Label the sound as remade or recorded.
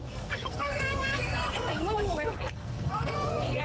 remade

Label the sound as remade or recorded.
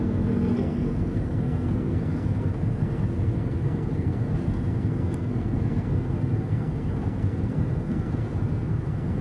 remade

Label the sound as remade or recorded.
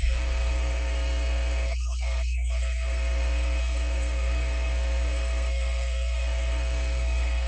remade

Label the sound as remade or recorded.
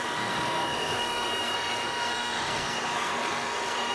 remade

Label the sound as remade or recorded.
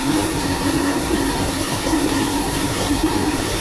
remade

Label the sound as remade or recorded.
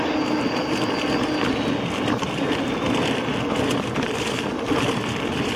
recorded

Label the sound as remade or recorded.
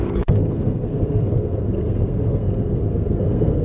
remade